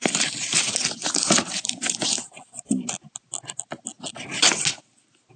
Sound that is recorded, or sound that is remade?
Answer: recorded